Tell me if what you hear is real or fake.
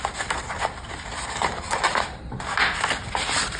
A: real